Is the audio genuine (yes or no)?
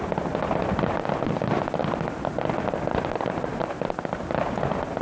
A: yes